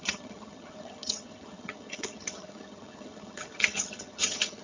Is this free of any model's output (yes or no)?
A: no